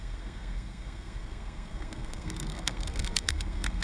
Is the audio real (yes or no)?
no